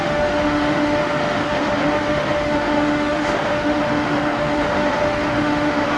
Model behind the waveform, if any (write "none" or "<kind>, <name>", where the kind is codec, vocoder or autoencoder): autoencoder, DAC-VAE